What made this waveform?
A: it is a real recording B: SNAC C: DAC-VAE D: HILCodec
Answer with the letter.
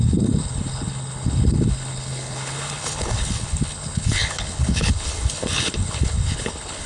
D